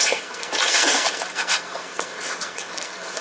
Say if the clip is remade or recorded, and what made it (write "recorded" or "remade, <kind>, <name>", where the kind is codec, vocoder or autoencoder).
remade, codec, SNAC